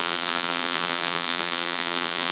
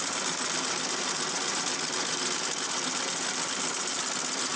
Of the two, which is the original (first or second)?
second